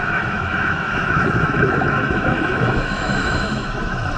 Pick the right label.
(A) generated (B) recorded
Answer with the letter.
A